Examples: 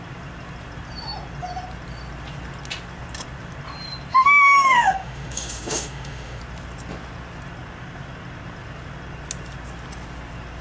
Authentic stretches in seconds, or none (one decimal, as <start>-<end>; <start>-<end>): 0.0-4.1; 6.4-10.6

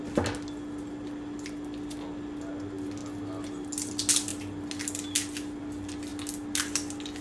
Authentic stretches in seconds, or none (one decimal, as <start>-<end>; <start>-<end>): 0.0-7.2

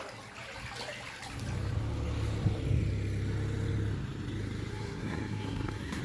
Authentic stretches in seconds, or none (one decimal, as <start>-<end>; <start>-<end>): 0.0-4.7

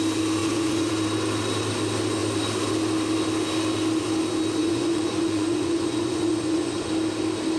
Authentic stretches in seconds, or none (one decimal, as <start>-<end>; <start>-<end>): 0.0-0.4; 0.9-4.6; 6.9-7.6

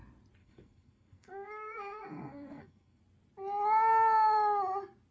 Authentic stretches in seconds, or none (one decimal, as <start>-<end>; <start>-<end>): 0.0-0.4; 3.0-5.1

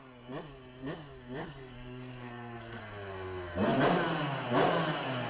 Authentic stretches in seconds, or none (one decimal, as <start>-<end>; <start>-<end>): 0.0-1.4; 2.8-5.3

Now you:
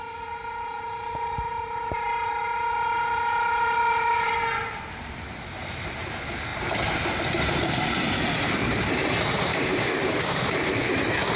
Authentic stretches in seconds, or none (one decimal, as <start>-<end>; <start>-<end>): 0.0-9.5; 10.4-11.4

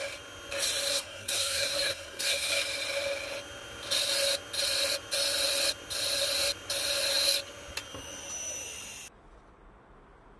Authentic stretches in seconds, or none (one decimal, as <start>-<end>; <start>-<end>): 0.0-0.9; 2.6-10.4